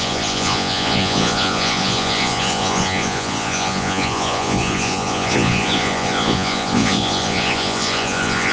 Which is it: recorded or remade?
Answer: remade